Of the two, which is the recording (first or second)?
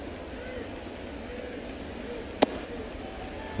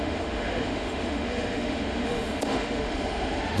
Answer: first